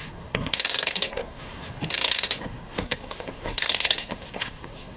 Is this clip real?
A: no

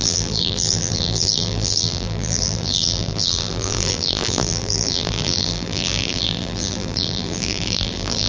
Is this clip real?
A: no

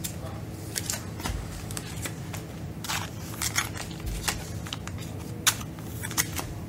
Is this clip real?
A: yes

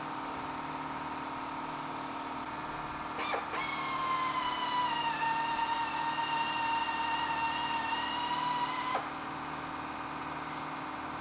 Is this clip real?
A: yes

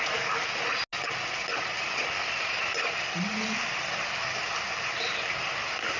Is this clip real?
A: yes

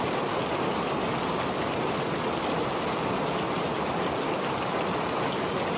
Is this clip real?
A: yes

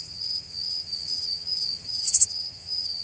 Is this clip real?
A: no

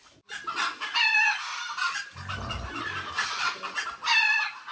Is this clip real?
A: no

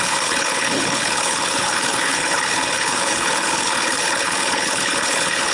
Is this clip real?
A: no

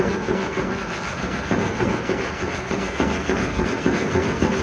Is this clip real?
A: no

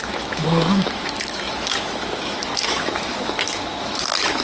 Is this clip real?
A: no